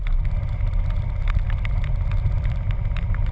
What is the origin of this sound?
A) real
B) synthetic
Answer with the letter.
A